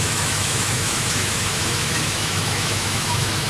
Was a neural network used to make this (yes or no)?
yes